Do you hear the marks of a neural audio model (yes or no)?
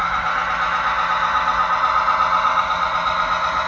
no